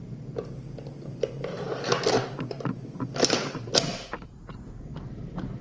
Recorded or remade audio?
recorded